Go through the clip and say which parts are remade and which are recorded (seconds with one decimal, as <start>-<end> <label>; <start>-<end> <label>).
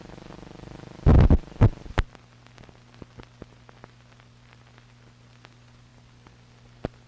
0.0-7.1 recorded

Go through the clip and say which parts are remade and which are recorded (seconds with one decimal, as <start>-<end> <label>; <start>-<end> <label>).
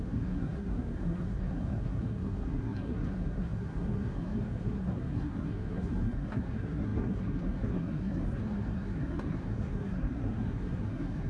0.0-11.3 remade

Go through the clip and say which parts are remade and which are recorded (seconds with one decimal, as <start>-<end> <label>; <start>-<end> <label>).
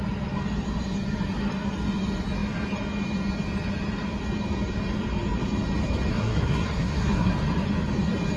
0.0-6.1 recorded; 6.1-7.3 remade; 7.3-8.4 recorded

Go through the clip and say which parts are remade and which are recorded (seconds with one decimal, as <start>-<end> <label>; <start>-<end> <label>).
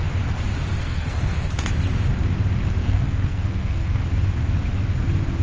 0.0-0.8 recorded; 0.8-1.5 remade; 1.5-2.8 recorded; 2.8-4.0 remade; 4.0-5.4 recorded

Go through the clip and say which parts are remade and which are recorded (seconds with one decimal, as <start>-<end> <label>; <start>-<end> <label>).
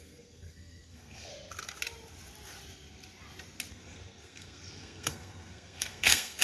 0.0-1.3 remade; 1.3-3.7 recorded; 3.7-6.4 remade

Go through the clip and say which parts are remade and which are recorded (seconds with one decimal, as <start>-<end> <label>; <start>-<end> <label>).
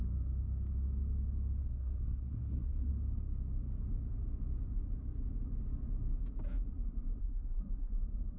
0.0-1.6 recorded; 1.6-2.9 remade; 2.9-7.2 recorded; 7.2-7.9 remade; 7.9-8.4 recorded